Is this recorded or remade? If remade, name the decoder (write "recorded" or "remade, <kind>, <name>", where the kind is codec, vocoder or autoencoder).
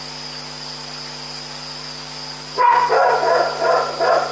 recorded